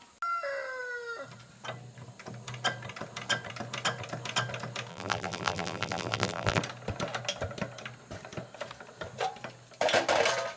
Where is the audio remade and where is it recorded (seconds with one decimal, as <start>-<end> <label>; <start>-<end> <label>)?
0.0-4.9 recorded; 4.9-6.6 remade; 6.6-10.6 recorded